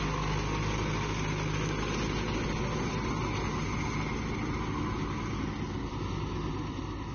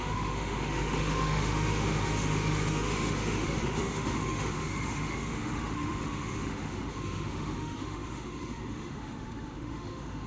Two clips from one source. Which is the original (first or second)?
first